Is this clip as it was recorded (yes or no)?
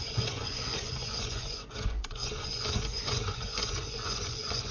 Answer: no